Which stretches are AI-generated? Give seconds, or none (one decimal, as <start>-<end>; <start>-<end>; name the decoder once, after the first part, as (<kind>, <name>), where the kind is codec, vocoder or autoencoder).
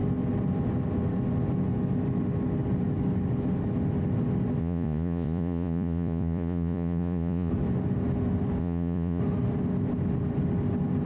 4.6-7.5 (vocoder, Vocos); 8.6-9.2